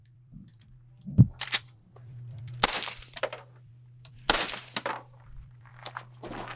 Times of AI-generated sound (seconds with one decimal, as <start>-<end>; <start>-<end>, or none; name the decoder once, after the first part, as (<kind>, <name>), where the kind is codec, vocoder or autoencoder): 0.0-5.7 (vocoder, BigVGAN v2)